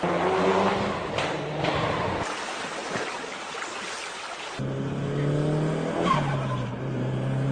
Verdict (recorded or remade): recorded